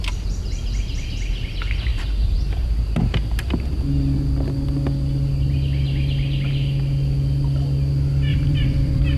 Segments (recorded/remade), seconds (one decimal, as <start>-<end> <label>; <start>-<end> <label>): 0.0-1.9 recorded; 1.9-2.8 remade; 2.8-8.3 recorded; 8.3-9.2 remade